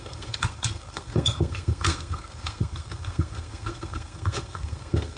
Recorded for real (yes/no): no